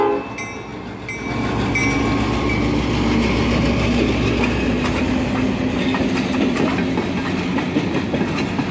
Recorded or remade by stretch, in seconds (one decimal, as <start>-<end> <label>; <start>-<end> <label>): 0.0-8.7 recorded

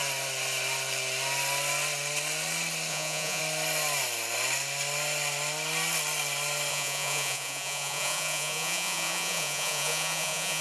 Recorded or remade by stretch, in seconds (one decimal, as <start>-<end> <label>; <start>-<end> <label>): 0.0-2.9 recorded; 2.9-3.4 remade; 3.4-6.7 recorded; 6.7-10.6 remade

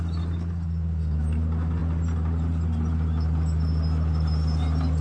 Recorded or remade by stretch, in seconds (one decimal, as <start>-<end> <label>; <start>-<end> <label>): 0.0-5.0 recorded

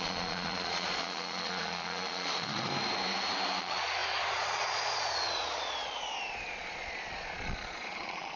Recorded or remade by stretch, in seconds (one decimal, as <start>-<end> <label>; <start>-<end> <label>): 0.0-2.7 remade; 2.7-3.6 recorded; 3.6-8.4 remade

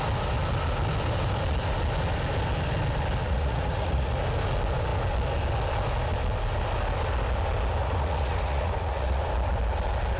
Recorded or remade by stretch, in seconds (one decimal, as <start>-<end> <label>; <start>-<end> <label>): 0.0-3.2 recorded; 3.2-4.1 remade; 4.1-7.8 recorded; 7.8-9.2 remade; 9.2-10.2 recorded